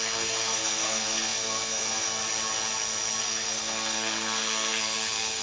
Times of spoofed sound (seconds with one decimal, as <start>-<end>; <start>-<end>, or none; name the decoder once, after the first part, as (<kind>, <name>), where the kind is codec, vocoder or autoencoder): 0.0-2.2 (codec, SNAC); 3.2-5.4